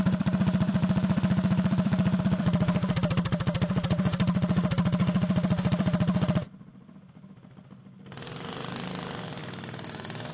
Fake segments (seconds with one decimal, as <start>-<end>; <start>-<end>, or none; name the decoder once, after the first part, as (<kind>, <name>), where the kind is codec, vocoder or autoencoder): 0.8-2.2 (autoencoder, DAC-VAE); 9.4-10.3